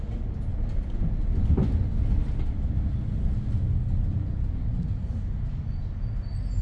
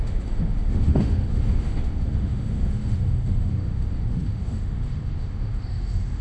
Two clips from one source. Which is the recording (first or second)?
first